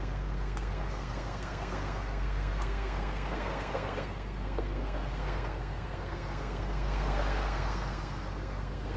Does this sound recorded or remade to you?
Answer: remade